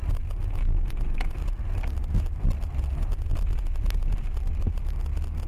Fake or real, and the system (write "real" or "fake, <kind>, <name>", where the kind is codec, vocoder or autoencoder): real